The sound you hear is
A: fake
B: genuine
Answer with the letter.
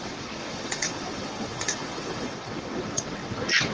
A